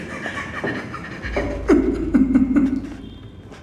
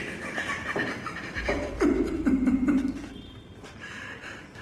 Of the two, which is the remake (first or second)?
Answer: second